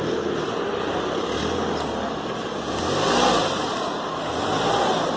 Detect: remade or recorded recorded